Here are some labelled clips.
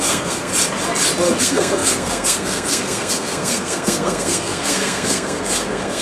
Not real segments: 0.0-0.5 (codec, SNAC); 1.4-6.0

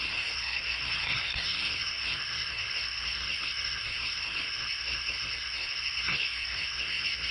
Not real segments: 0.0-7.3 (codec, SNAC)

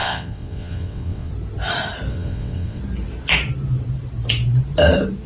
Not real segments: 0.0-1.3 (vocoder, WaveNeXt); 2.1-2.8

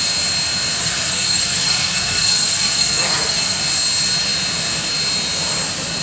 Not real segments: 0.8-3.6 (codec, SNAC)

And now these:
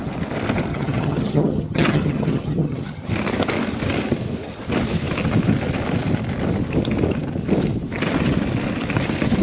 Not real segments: 0.7-3.1 (vocoder, HiFi-GAN)